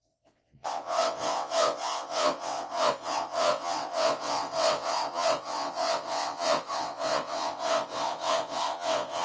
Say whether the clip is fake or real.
fake